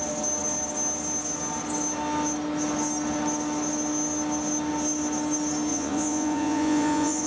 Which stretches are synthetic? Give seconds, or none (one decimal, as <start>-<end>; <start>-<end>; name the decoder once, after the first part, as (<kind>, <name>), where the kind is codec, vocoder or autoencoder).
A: 5.7-7.3 (vocoder, Vocos)